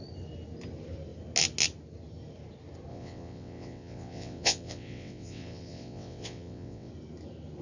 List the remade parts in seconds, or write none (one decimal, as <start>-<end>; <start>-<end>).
2.9-6.9